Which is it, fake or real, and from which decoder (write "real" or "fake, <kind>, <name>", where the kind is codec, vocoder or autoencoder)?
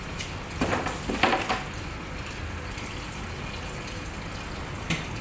real